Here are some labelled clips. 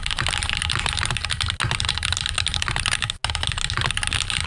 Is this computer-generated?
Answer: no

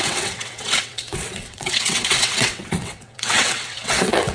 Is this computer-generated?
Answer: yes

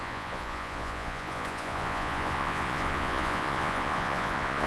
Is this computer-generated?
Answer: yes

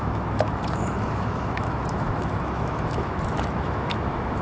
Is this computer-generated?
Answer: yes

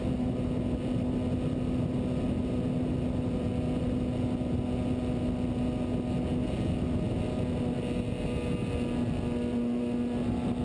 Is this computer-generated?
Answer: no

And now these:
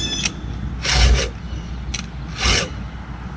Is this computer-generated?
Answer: no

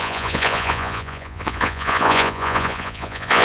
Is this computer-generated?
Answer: yes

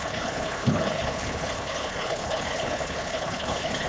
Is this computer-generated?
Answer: yes